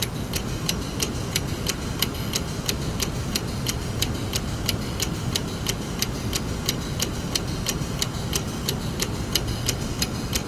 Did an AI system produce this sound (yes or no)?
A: no